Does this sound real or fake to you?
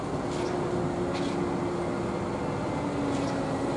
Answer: real